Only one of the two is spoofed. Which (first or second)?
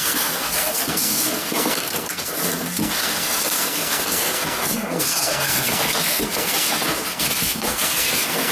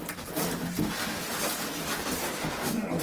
first